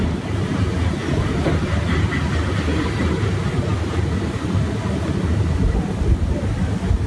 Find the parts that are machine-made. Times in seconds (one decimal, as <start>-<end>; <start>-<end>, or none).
1.0-1.7